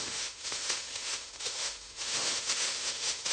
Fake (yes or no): yes